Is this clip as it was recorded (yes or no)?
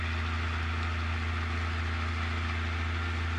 yes